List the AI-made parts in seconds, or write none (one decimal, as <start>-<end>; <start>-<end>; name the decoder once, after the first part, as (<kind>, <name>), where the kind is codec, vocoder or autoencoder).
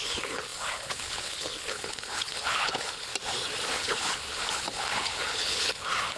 0.0-3.1 (codec, HILCodec); 3.7-6.2